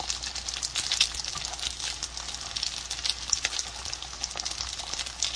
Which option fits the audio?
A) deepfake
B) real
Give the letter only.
B